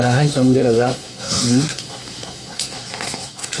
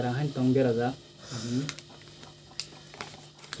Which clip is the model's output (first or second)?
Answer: first